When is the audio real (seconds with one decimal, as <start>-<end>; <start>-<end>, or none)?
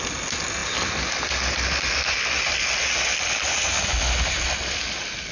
0.0-5.3